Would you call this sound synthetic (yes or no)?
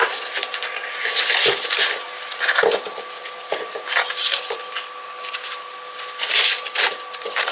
no